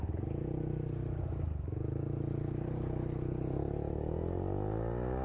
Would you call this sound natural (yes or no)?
yes